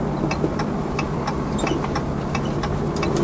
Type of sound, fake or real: real